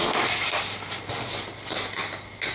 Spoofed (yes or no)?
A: no